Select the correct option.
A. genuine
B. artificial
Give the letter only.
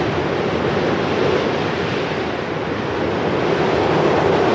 A